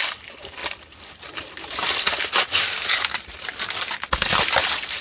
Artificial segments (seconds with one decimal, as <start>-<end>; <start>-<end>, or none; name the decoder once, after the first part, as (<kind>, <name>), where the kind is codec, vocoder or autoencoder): none